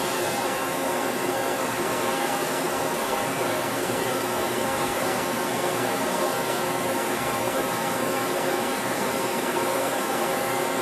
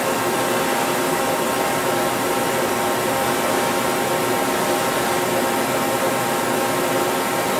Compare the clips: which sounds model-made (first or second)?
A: first